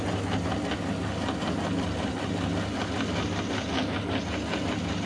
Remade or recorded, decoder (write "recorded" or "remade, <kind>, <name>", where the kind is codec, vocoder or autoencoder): recorded